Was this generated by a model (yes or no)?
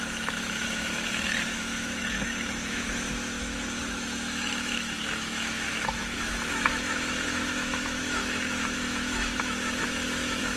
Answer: yes